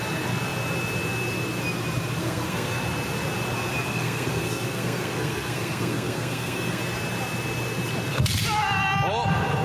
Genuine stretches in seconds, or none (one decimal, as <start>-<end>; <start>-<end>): 0.0-2.2; 2.8-3.9; 6.8-9.6